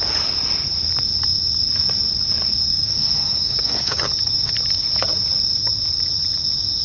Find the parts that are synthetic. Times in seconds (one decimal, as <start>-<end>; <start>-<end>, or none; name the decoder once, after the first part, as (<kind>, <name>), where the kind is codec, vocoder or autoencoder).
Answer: 2.7-4.5 (codec, DAC)